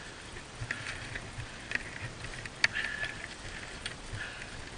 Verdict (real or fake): real